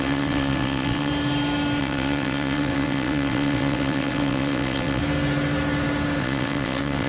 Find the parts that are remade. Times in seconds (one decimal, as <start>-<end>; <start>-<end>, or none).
0.0-1.1; 1.8-5.0; 6.2-7.1